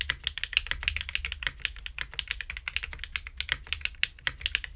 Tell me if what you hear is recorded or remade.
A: recorded